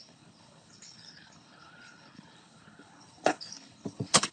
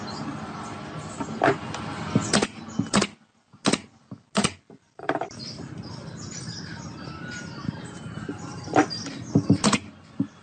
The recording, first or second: second